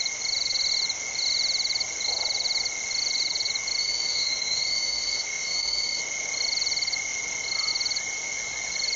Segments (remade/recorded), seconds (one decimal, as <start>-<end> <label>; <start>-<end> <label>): 0.0-3.8 recorded; 3.8-6.0 remade; 6.0-9.0 recorded